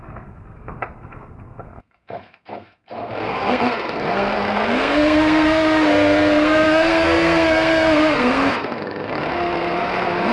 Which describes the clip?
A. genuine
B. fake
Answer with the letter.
B